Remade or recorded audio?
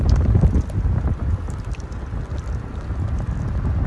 recorded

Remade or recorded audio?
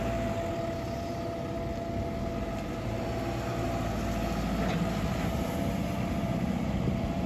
recorded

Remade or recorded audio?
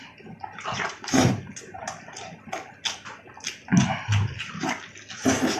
recorded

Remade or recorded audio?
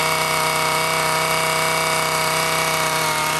recorded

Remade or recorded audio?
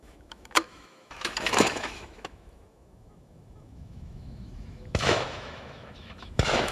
remade